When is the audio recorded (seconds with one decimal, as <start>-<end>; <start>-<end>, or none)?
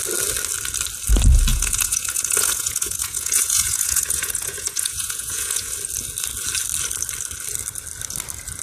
0.0-1.5; 5.7-8.6